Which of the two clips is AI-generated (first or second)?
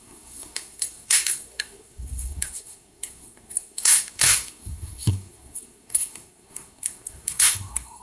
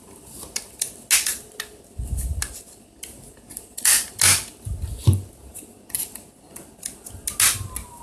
first